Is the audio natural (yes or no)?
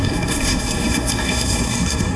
no